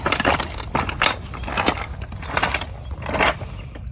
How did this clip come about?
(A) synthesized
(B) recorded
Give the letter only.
B